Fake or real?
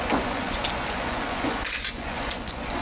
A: fake